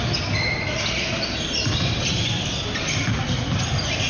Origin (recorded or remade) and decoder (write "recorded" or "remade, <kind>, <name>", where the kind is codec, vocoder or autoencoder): recorded